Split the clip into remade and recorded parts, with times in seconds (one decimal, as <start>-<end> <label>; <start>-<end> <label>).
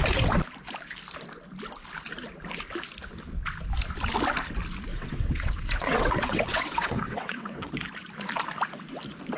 0.0-4.9 recorded; 4.9-7.7 remade; 7.7-9.4 recorded